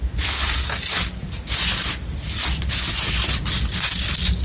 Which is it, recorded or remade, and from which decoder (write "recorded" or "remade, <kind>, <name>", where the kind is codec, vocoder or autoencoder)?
recorded